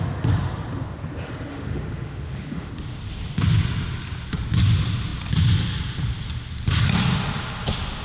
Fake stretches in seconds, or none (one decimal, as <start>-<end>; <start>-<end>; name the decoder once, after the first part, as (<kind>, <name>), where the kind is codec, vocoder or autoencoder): 1.5-2.7 (autoencoder, DAC-VAE)